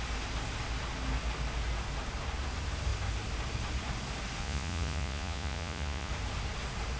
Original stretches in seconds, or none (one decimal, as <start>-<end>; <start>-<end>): 0.0-4.4; 6.1-7.0

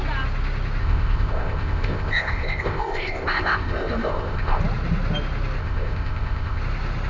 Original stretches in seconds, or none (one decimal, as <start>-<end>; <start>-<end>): 0.0-0.8; 4.6-5.6; 6.6-7.1